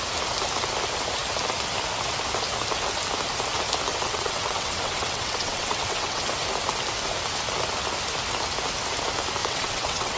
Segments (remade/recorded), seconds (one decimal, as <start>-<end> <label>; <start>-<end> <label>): 0.0-3.9 recorded; 3.9-6.2 remade; 6.2-9.4 recorded; 9.4-10.2 remade